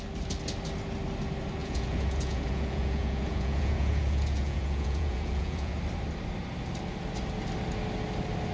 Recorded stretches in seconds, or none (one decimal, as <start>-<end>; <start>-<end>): 0.0-1.6; 5.7-8.5

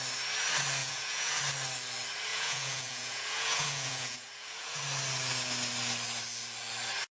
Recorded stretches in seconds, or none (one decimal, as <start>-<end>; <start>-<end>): 0.0-0.8; 1.4-2.3; 4.8-7.1

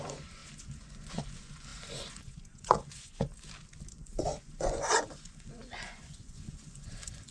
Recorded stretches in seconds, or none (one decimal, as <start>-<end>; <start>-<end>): 3.3-3.9

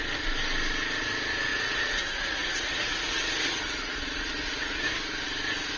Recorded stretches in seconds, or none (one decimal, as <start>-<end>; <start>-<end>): 0.0-1.5; 4.9-5.8

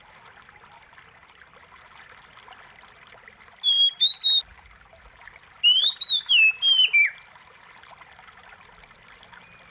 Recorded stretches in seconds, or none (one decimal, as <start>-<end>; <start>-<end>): 0.0-9.7

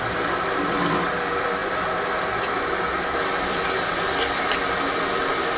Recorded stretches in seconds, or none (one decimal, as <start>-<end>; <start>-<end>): 0.0-5.6

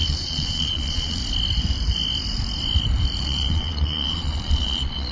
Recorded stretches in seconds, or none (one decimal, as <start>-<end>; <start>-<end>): 1.2-3.2

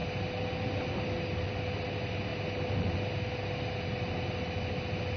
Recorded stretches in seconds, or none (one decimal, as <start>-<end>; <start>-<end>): 0.0-5.2